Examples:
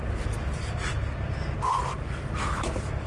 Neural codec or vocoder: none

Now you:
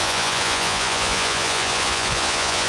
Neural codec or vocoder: vocoder, Vocos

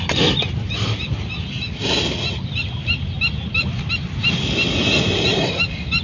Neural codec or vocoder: none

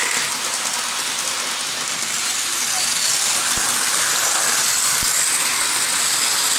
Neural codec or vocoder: none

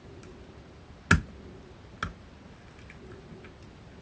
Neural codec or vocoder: none